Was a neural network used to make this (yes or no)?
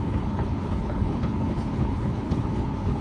yes